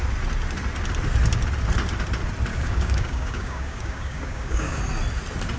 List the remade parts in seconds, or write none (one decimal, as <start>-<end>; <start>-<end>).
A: 2.5-4.8